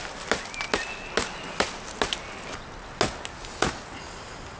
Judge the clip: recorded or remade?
recorded